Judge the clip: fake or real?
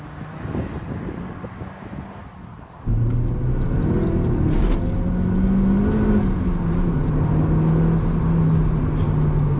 real